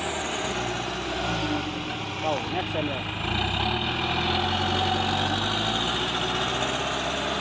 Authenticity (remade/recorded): recorded